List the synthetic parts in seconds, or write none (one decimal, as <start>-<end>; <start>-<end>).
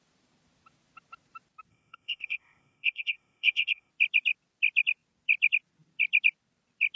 1.7-3.9